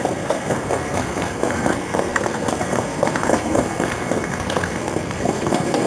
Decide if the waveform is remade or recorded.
remade